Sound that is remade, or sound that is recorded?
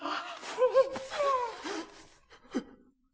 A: recorded